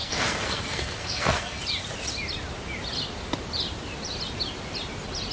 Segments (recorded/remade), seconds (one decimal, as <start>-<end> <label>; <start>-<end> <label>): 0.0-1.6 remade; 1.6-5.3 recorded